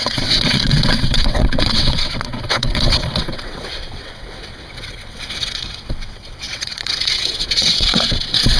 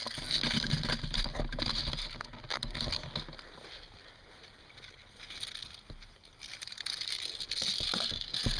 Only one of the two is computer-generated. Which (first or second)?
first